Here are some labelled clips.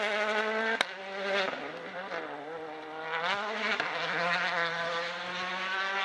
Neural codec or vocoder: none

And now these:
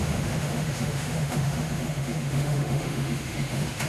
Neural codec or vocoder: autoencoder, DAC-VAE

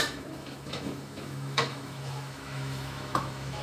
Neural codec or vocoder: autoencoder, DAC-VAE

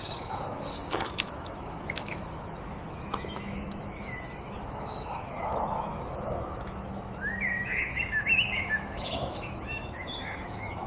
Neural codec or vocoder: autoencoder, DAC-VAE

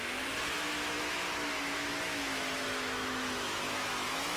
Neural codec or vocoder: autoencoder, DAC-VAE